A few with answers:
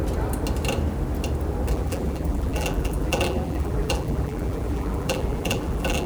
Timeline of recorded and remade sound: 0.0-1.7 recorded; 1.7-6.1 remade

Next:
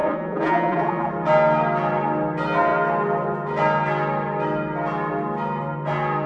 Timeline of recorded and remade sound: 0.0-1.1 remade; 1.1-6.3 recorded

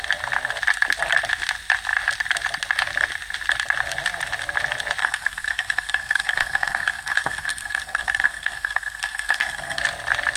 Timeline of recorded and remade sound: 0.0-5.0 recorded; 5.0-9.8 remade; 9.8-10.4 recorded

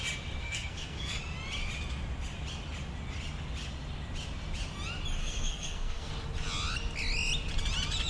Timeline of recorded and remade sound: 0.0-0.4 recorded; 0.4-1.2 remade; 1.2-5.2 recorded; 5.2-6.1 remade; 6.1-8.1 recorded

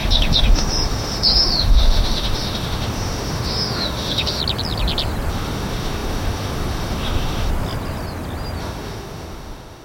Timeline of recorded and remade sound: 0.0-4.4 remade; 4.4-5.3 recorded; 5.3-7.5 remade; 7.5-8.6 recorded; 8.6-9.8 remade

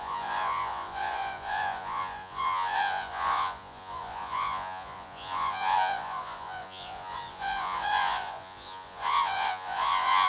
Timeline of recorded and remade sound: 0.0-10.3 remade

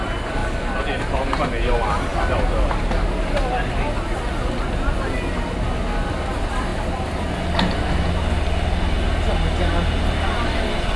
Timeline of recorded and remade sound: 0.0-11.0 recorded